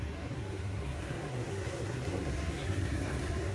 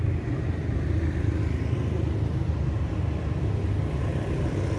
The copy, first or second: first